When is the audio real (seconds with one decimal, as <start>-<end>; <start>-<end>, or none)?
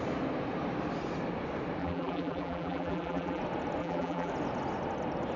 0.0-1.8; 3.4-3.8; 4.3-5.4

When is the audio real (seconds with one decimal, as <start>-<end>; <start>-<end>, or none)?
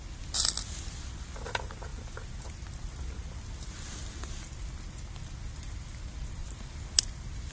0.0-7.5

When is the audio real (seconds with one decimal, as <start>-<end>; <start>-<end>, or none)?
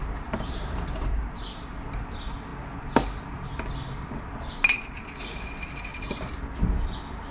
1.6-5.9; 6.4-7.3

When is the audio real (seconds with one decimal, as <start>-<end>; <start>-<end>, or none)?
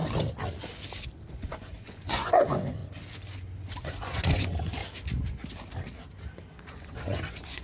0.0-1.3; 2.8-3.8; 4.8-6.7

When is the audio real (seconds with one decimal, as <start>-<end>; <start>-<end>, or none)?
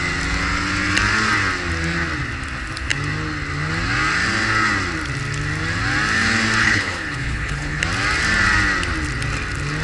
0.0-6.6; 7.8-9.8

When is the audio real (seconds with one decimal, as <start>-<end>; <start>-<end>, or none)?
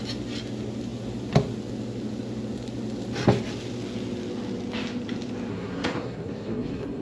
0.0-5.5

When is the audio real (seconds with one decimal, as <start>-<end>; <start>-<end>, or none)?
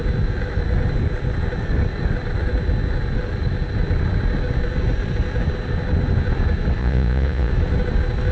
0.0-6.8; 7.5-8.3